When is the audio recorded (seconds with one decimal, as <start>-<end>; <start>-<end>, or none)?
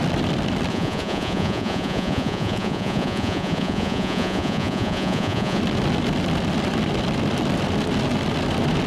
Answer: 0.0-0.7; 5.6-8.9